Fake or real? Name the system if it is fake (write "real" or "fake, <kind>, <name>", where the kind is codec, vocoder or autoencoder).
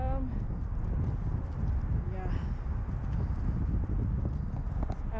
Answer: real